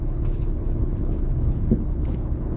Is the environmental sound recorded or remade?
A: remade